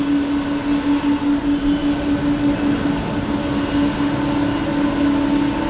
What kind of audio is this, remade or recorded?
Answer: recorded